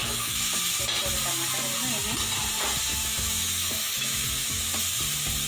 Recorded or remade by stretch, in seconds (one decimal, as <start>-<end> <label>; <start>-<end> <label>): 0.0-0.5 remade; 0.5-2.9 recorded; 2.9-4.6 remade; 4.6-5.5 recorded